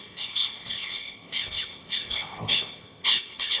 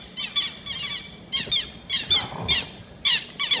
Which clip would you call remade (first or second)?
first